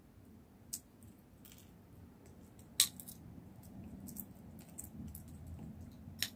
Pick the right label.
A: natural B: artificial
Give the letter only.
A